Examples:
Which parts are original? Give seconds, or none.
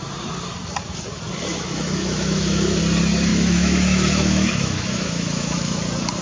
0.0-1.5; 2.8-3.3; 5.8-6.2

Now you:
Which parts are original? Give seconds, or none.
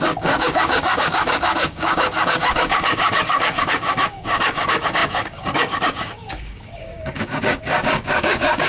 none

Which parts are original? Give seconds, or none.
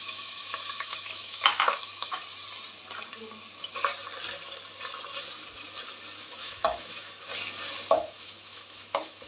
2.2-6.2; 7.3-7.9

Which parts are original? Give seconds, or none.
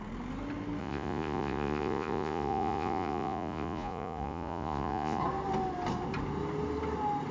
0.0-0.8; 5.2-7.3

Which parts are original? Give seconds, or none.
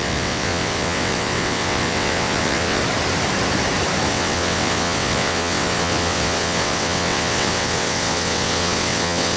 2.8-4.1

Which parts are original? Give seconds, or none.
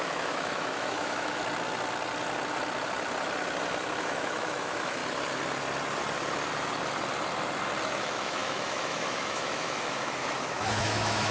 1.4-4.0; 5.0-8.0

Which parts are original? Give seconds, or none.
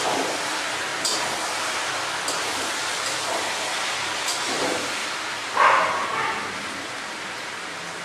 0.9-1.5; 5.0-6.6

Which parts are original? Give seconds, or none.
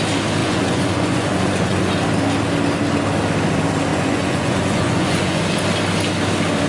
0.0-0.4; 1.9-3.9; 5.4-6.7